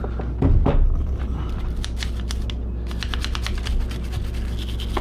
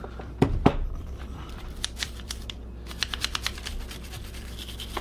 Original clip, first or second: first